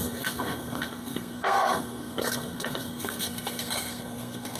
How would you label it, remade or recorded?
remade